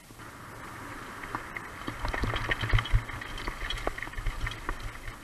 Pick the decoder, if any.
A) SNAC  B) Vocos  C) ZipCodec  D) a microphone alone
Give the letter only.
D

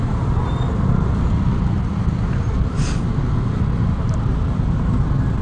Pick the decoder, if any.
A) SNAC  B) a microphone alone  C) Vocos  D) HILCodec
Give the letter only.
B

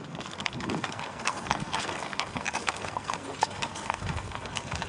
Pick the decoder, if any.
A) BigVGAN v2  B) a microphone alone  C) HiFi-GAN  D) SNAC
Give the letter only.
D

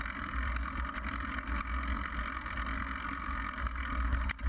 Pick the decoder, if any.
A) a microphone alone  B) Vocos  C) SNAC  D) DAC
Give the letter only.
A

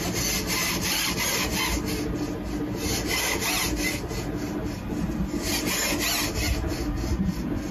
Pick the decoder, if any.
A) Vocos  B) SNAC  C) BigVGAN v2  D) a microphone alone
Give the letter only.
D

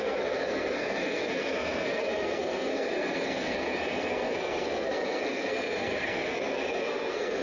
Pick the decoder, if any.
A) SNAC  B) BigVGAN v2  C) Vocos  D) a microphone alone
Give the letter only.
A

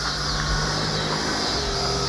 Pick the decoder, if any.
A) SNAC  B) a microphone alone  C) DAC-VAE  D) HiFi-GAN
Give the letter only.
B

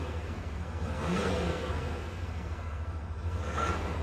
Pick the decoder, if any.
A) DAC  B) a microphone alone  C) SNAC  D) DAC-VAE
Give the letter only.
C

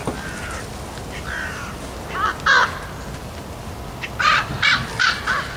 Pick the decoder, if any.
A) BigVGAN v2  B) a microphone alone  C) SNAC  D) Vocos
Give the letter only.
B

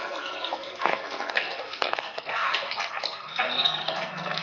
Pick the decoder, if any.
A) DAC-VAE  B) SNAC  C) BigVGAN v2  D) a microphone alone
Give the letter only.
B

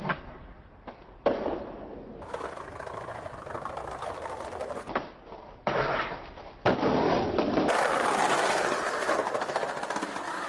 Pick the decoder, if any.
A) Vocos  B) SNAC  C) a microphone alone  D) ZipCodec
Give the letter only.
C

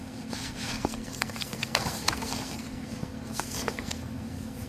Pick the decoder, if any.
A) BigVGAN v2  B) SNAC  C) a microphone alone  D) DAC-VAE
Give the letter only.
B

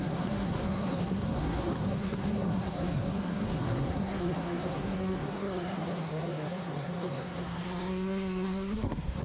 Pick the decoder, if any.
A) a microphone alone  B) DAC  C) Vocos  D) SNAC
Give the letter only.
D